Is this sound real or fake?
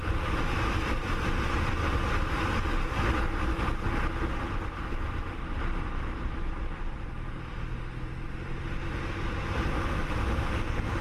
real